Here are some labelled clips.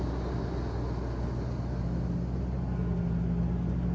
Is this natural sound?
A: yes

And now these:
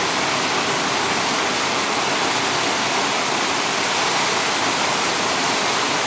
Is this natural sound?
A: yes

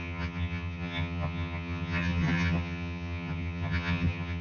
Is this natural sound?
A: no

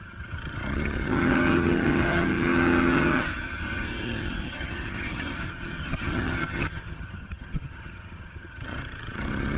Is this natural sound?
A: no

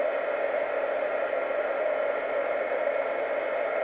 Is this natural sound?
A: yes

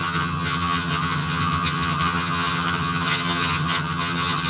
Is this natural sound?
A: no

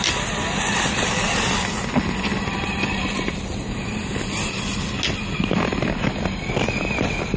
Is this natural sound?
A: yes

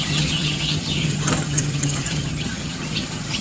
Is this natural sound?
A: no